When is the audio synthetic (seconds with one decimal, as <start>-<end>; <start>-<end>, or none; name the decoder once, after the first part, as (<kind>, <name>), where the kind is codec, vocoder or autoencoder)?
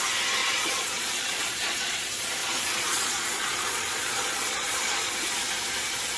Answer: 0.4-2.0 (vocoder, Vocos); 2.4-5.1